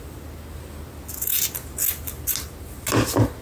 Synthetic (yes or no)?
no